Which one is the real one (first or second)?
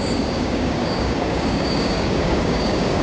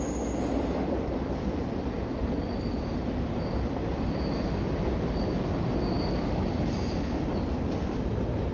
second